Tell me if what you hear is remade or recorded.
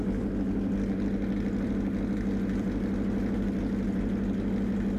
recorded